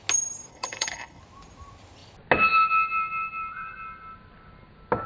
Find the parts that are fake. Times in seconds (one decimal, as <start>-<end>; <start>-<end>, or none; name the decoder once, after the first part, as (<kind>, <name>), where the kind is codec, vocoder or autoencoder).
0.5-1.2 (codec, HILCodec)